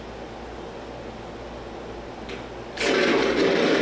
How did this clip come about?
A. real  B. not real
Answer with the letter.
A